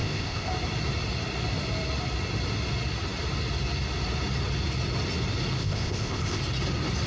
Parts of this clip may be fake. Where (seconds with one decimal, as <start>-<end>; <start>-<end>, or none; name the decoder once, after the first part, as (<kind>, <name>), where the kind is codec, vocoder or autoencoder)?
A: 0.0-0.5 (codec, ZipCodec); 5.6-6.4

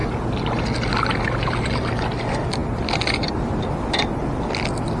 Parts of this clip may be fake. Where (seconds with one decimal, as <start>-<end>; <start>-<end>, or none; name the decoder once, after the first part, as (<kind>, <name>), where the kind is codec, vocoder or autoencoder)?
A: none

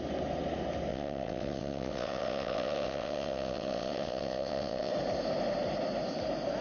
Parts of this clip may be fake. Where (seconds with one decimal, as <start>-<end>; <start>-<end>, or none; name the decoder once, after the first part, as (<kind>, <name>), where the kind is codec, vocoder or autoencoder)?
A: 0.9-4.9 (vocoder, WaveNeXt)

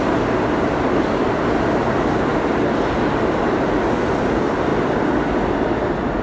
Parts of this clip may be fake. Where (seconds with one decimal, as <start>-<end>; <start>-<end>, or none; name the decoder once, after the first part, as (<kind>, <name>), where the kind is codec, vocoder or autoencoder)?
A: 2.3-3.0 (vocoder, BigVGAN v2); 4.7-5.3

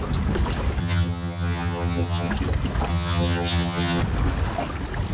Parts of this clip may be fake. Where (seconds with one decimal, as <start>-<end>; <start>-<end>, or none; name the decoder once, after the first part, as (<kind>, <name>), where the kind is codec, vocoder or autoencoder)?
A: 0.8-2.3 (vocoder, HiFi-GAN); 2.9-4.0